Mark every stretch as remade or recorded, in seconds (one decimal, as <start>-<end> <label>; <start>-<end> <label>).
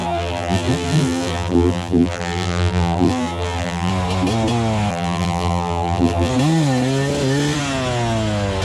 0.0-3.9 remade; 3.9-4.9 recorded; 4.9-6.3 remade; 6.3-8.6 recorded